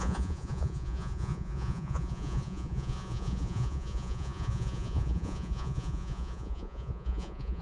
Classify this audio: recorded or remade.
remade